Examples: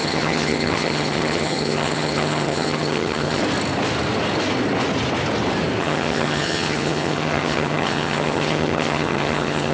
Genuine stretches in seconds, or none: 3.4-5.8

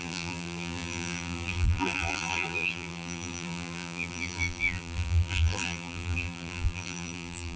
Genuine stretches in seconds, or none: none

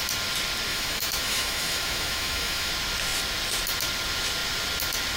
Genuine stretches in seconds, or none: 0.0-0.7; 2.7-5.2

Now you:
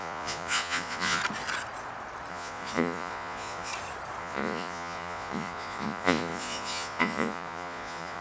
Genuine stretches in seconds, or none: 1.2-2.3; 3.7-4.2